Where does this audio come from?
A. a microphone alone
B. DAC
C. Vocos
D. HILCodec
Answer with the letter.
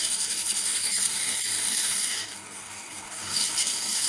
B